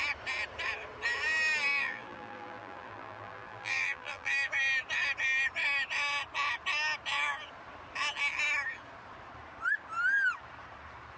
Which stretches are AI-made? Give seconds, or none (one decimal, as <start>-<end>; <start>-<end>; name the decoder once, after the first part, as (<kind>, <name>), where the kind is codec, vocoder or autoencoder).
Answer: 1.7-4.5 (vocoder, BigVGAN v2)